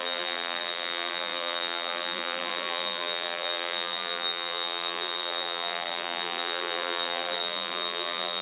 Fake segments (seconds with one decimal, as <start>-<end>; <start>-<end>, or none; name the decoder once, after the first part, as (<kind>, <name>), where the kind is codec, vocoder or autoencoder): 0.0-8.4 (vocoder, BigVGAN v2)